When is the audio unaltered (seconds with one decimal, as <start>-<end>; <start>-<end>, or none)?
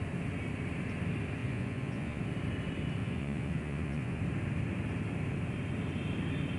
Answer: 0.0-1.4; 2.2-3.0; 4.2-6.6